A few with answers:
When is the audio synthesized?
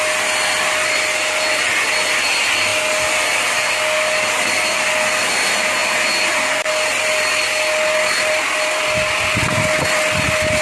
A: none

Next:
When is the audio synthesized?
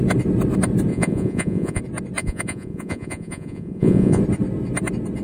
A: 0.9-1.8 (vocoder, Vocos); 2.2-4.2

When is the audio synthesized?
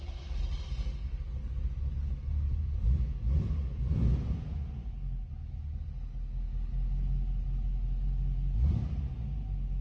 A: 2.5-4.9 (vocoder, Vocos)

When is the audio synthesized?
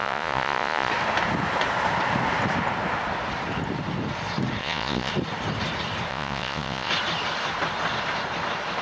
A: 0.0-0.9 (vocoder, Vocos); 4.6-5.1; 6.1-6.9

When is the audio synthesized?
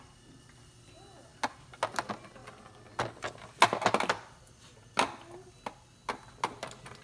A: none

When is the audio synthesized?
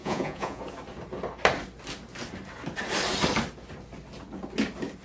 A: 0.0-0.6 (vocoder, Vocos)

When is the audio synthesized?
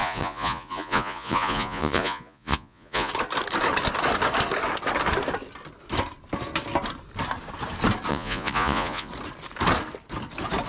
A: 0.0-3.1 (vocoder, Vocos); 8.1-9.1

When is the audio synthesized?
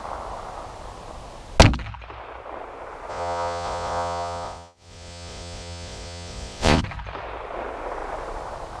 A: 3.1-6.8 (vocoder, Vocos)